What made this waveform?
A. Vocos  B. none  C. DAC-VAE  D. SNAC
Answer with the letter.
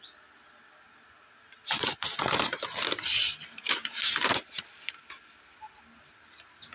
B